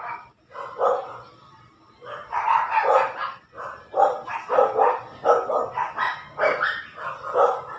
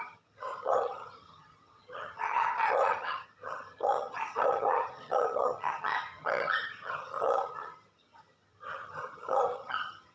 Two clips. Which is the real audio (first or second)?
first